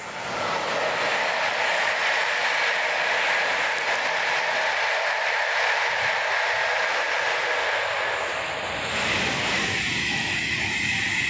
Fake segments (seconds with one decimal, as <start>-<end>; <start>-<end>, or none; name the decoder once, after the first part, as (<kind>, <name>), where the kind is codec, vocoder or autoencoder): 10.0-10.7 (autoencoder, DAC-VAE)